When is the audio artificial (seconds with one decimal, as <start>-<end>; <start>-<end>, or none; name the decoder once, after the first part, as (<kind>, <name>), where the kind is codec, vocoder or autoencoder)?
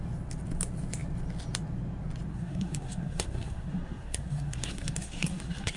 2.3-5.8 (codec, SNAC)